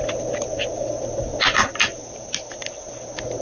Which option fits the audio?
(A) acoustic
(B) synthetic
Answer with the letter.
A